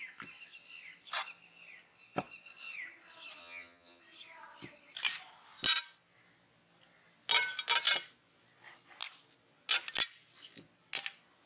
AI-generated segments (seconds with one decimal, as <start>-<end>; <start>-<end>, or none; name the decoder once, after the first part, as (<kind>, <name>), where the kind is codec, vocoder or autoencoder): 3.4-4.0 (vocoder, HiFi-GAN)